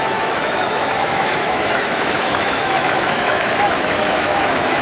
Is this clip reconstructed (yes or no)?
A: yes